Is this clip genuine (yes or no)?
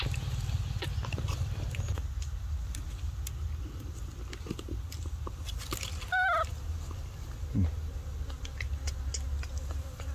yes